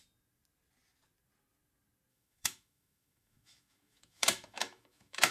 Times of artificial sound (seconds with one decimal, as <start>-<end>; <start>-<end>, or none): 2.1-5.3